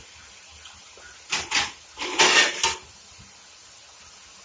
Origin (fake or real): real